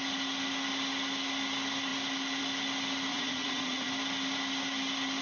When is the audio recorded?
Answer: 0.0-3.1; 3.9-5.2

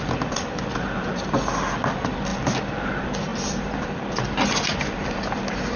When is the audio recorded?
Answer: 0.0-5.8

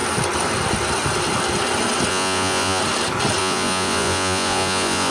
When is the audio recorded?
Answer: 0.0-2.1; 2.8-3.4

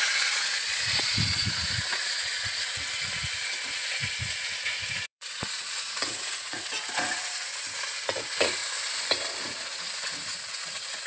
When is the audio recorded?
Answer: 8.6-9.4

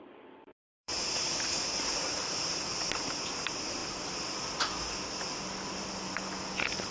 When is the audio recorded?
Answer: 0.0-0.5; 2.7-6.9

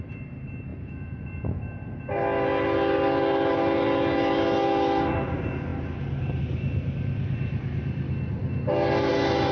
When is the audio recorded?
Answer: 0.0-0.7; 1.6-9.5

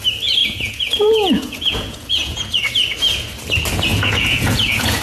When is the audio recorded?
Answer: 0.0-0.4; 2.6-3.9